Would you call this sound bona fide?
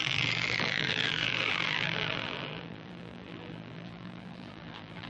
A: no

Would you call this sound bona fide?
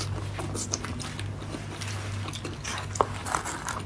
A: yes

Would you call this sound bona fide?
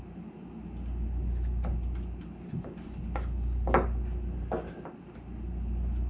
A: yes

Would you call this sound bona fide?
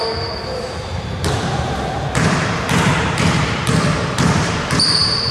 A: no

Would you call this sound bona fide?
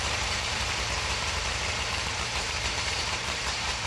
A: no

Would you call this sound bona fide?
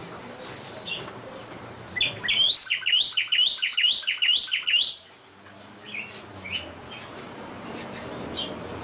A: yes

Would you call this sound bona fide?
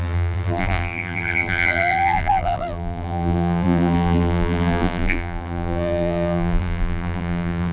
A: no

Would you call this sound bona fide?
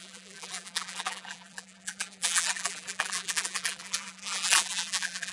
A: no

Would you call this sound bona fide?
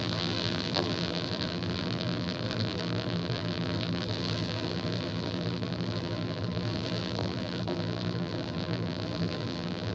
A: no